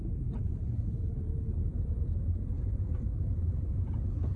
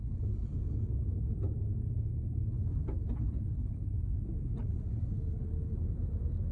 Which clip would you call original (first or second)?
second